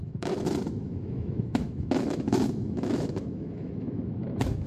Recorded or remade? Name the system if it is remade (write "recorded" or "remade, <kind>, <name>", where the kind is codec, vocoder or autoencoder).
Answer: remade, autoencoder, DAC-VAE